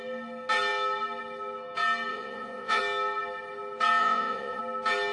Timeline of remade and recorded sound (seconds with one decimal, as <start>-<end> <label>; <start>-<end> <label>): 0.0-2.1 recorded; 2.1-2.8 remade; 2.8-4.0 recorded; 4.0-4.6 remade; 4.6-5.1 recorded